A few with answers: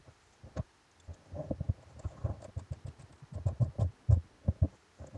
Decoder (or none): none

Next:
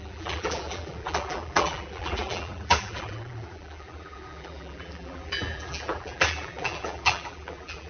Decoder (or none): vocoder, BigVGAN v2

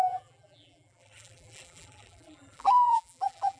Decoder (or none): vocoder, BigVGAN v2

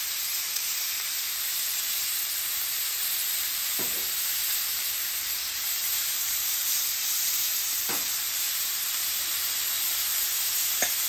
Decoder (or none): vocoder, BigVGAN v2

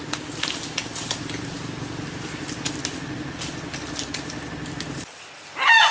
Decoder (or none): none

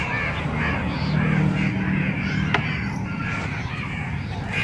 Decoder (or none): none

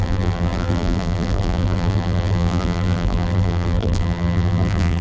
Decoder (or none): vocoder, BigVGAN v2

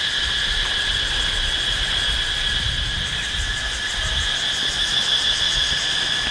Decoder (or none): none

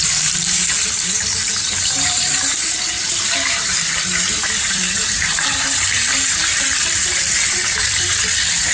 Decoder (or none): vocoder, BigVGAN v2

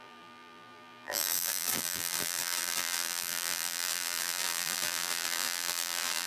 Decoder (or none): vocoder, BigVGAN v2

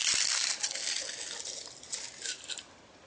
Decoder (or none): none